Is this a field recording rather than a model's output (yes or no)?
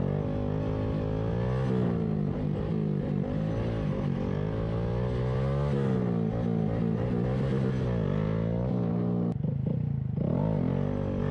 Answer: yes